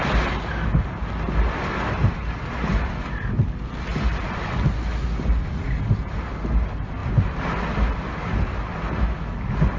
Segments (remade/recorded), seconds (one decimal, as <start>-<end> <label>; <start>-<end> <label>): 0.0-9.8 recorded

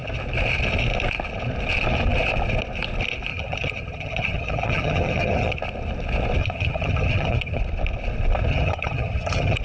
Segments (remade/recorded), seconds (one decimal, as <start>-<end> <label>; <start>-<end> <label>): 0.0-3.3 recorded; 3.3-5.6 remade; 5.6-6.4 recorded; 6.4-7.6 remade; 7.6-8.5 recorded; 8.5-9.6 remade

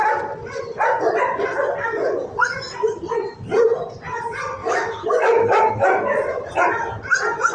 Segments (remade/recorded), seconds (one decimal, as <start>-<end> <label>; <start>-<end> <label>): 0.0-4.6 recorded; 4.6-5.7 remade; 5.7-7.5 recorded

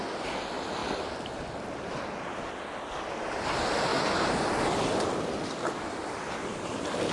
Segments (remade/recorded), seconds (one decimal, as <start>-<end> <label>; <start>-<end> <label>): 0.0-7.1 recorded